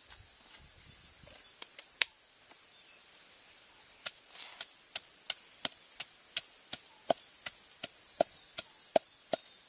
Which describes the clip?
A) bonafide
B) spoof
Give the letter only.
A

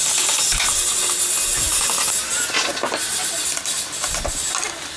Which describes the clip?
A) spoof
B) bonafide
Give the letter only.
B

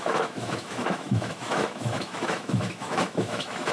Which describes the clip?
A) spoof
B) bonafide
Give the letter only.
A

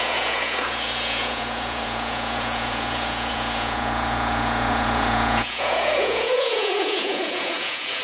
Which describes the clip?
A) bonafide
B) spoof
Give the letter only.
B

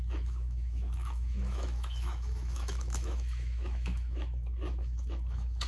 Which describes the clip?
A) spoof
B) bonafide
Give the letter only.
A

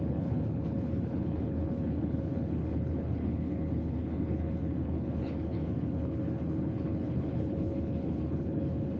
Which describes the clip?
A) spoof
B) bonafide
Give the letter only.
A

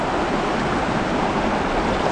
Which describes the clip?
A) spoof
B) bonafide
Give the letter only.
B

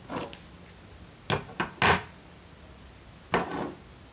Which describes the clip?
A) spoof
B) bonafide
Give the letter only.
B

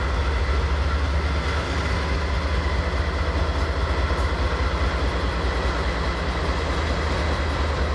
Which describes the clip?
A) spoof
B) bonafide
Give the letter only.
B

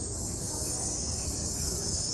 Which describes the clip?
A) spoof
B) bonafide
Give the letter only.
A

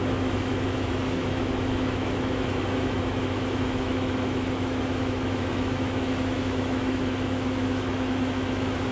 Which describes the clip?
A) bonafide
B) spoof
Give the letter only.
B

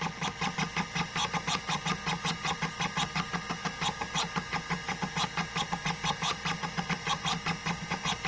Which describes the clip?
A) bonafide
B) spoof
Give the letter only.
A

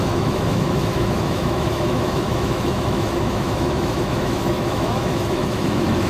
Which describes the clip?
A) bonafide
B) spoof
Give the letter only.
B